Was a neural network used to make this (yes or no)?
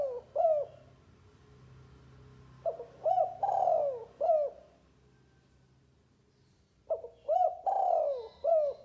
no